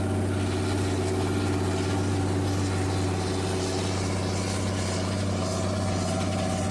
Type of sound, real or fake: real